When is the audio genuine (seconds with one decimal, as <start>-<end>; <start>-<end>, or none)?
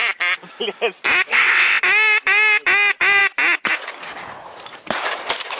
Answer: 0.0-1.3; 1.8-5.6